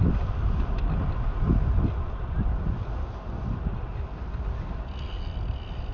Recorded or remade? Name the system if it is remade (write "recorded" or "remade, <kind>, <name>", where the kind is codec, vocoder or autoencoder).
recorded